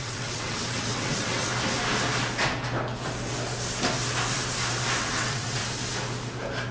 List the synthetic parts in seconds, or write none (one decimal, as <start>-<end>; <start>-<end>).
0.0-1.5; 5.0-5.6